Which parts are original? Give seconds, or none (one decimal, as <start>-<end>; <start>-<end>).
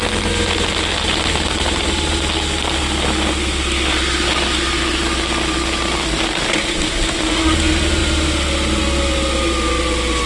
0.0-10.3